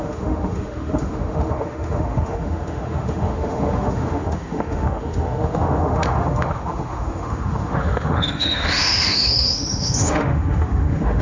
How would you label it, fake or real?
fake